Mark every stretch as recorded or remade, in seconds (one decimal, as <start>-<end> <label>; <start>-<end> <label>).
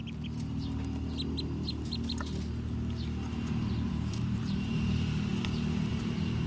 0.0-3.9 recorded; 3.9-5.3 remade; 5.3-5.9 recorded; 5.9-6.5 remade